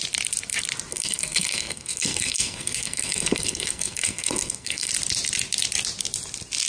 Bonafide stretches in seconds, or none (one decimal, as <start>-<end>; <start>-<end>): 0.0-0.9; 4.9-6.7